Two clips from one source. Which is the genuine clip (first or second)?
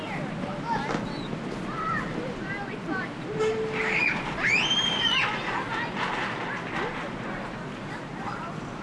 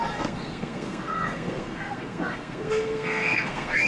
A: first